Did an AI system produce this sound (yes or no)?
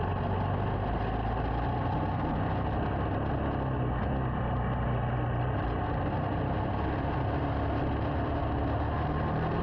no